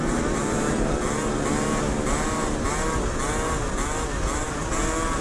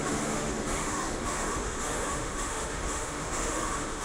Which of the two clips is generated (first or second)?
second